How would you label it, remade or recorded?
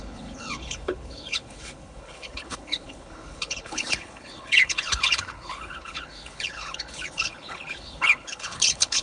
remade